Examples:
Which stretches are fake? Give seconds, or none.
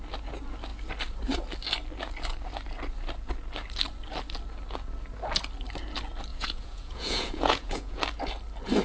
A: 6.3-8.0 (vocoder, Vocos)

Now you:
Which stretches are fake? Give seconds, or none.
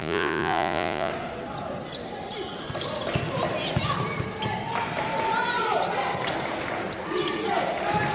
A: 0.0-1.1 (vocoder, Vocos)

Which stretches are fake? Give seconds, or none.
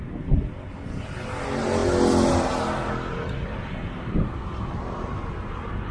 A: none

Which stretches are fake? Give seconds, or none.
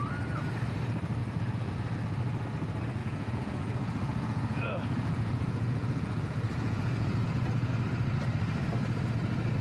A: 1.2-1.7 (vocoder, Vocos); 3.0-7.7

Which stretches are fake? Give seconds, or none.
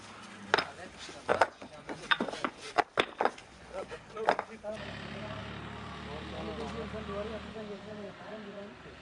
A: 1.3-2.8 (vocoder, Vocos); 3.4-4.0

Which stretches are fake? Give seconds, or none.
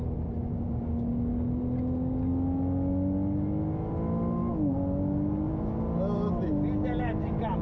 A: none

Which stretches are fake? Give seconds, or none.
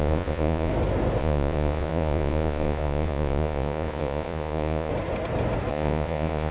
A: 0.0-0.7 (vocoder, Vocos); 1.2-4.9; 5.7-6.5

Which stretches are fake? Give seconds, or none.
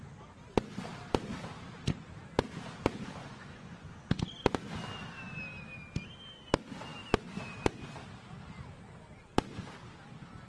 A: 3.2-4.0 (vocoder, Vocos)